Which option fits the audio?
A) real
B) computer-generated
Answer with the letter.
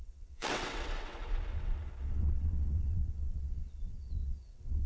B